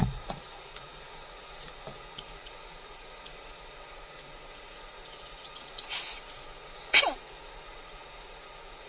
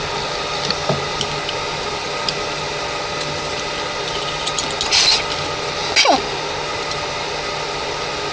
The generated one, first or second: first